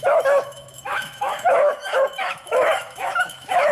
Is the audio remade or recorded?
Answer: remade